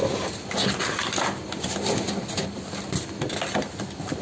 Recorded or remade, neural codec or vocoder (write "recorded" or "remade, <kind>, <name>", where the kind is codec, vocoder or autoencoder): recorded